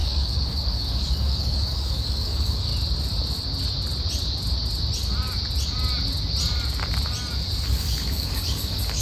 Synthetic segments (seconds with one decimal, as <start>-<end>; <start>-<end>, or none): 0.0-2.7; 7.8-9.0